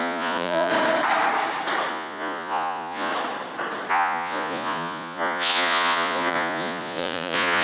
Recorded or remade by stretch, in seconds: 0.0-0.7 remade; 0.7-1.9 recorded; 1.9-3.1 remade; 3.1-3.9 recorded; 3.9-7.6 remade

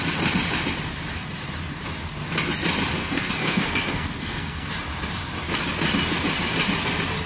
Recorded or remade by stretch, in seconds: 0.0-3.0 recorded; 3.0-4.7 remade; 4.7-7.3 recorded

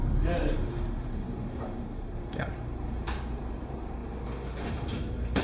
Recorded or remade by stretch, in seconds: 0.0-4.0 remade; 4.0-4.7 recorded; 4.7-5.4 remade

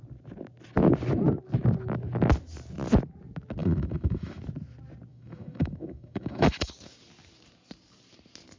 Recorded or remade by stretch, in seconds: 0.0-3.6 recorded; 3.6-4.4 remade; 4.4-5.1 recorded; 5.1-6.7 remade; 6.7-8.6 recorded

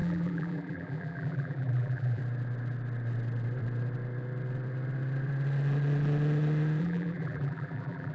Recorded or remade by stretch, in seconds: 0.0-2.2 remade; 2.2-6.8 recorded; 6.8-8.1 remade

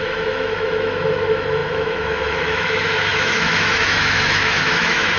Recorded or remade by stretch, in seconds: 0.0-5.2 remade

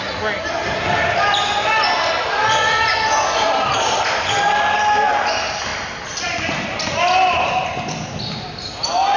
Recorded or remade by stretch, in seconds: 0.0-9.2 recorded

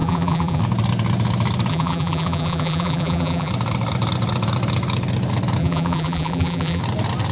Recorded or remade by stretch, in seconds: 0.0-0.6 remade; 0.6-1.7 recorded; 1.7-3.5 remade; 3.5-5.6 recorded; 5.6-6.8 remade; 6.8-7.3 recorded